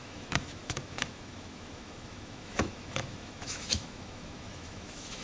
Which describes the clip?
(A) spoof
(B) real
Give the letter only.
A